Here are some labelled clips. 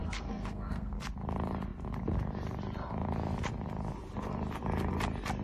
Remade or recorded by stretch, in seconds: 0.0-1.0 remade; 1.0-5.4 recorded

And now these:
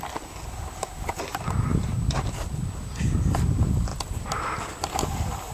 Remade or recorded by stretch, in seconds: 0.0-1.7 recorded; 1.7-2.3 remade; 2.3-3.9 recorded; 3.9-5.0 remade; 5.0-5.5 recorded

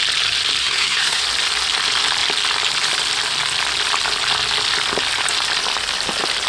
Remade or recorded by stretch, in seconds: 0.0-0.6 recorded; 0.6-1.2 remade; 1.2-6.5 recorded

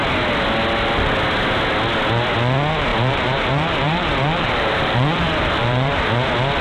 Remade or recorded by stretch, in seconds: 0.0-2.9 recorded; 2.9-6.1 remade; 6.1-6.6 recorded

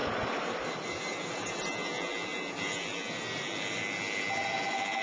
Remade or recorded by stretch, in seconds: 0.0-5.0 recorded

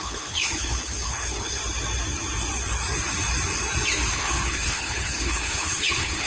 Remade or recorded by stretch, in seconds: 0.0-1.6 remade; 1.6-4.1 recorded; 4.1-6.3 remade

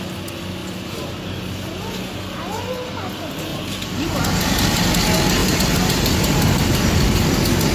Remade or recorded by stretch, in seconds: 0.0-0.6 recorded; 0.6-1.9 remade; 1.9-3.5 recorded; 3.5-4.2 remade; 4.2-5.4 recorded; 5.4-7.7 remade